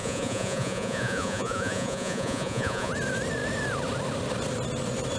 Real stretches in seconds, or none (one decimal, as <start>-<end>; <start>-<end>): 2.9-5.2